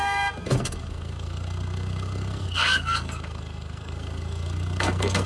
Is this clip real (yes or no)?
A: no